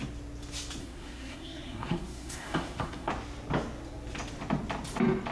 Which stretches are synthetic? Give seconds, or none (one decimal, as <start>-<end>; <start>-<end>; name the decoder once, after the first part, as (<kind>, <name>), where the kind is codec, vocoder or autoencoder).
0.8-3.1 (codec, SNAC)